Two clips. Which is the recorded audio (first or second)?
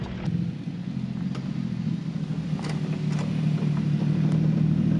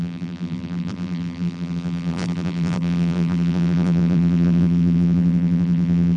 first